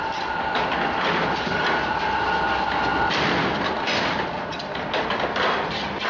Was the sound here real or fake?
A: real